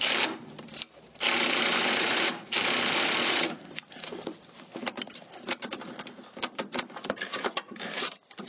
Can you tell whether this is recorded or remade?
remade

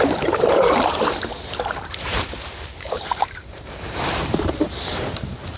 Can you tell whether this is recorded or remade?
remade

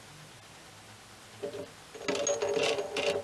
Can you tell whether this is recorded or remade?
recorded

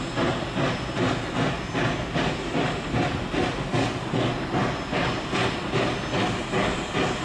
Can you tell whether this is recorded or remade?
recorded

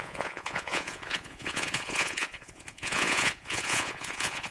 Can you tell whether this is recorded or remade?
remade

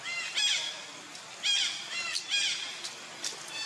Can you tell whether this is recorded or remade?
recorded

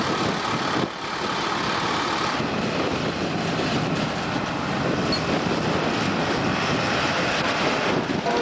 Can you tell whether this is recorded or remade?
recorded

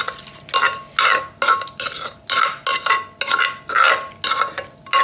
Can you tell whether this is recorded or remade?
recorded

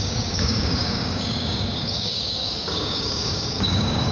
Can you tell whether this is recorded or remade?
remade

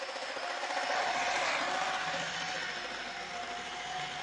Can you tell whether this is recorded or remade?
recorded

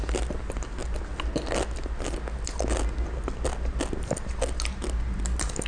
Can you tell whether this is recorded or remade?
recorded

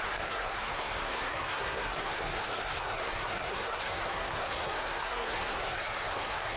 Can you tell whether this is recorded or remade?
remade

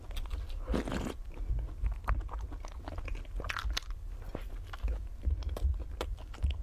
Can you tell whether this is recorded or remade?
recorded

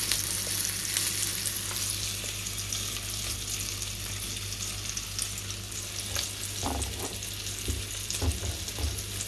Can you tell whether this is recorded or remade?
recorded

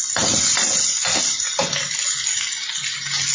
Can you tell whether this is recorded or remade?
recorded